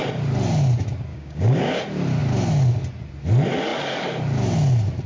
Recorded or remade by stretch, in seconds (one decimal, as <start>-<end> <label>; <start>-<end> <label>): 0.0-1.1 recorded; 1.1-1.8 remade; 1.8-5.1 recorded